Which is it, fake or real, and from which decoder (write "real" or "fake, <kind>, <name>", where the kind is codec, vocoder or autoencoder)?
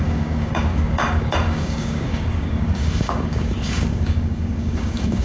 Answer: fake, codec, DAC